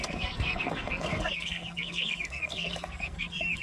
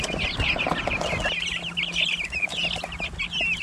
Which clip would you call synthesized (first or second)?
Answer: first